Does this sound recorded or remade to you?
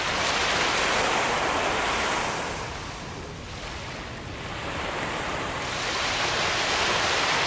recorded